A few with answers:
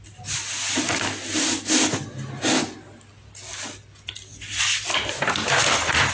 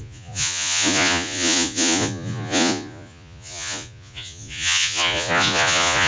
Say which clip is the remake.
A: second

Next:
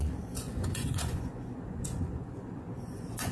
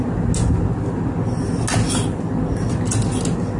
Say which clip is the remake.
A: first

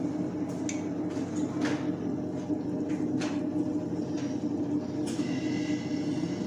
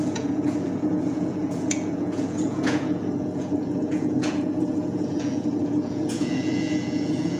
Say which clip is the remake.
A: second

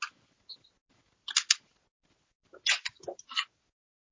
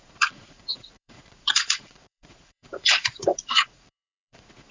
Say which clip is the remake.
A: second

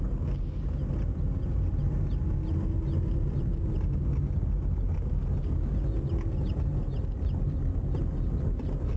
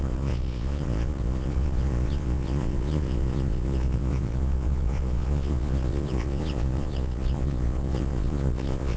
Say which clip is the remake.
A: second